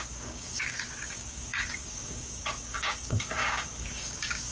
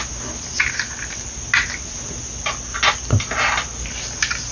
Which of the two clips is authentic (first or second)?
second